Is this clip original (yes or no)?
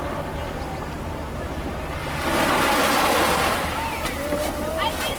yes